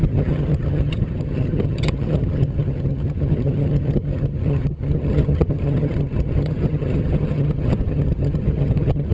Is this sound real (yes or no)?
no